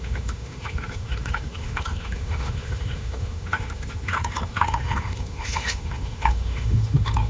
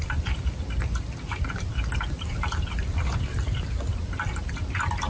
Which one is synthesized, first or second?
first